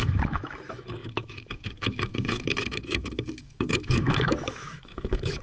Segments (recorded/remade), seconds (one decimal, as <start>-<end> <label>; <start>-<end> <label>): 0.0-5.4 remade